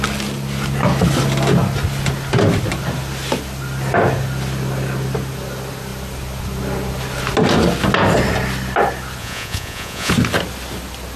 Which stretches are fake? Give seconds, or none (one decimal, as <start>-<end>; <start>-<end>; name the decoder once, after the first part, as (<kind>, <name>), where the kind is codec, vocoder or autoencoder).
9.2-10.1 (vocoder, Vocos)